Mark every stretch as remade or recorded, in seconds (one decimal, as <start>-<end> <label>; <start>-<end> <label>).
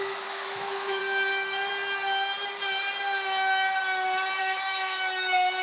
0.0-1.0 remade; 1.0-4.4 recorded; 4.4-5.6 remade